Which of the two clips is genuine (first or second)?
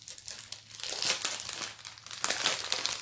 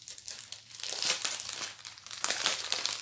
first